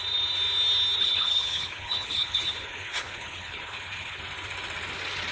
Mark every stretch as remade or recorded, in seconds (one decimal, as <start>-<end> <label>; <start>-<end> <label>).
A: 0.0-1.0 recorded; 1.0-4.2 remade; 4.2-5.3 recorded